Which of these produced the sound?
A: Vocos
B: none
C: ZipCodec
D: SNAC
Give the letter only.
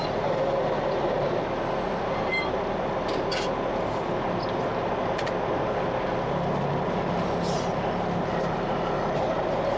B